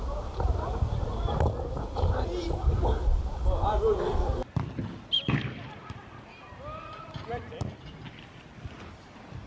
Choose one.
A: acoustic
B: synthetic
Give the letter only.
A